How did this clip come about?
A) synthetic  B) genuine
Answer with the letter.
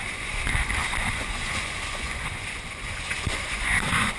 A